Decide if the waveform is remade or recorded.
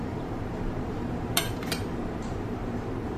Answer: remade